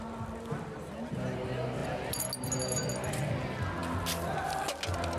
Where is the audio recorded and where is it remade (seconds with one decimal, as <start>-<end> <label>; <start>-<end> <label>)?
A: 0.0-5.2 recorded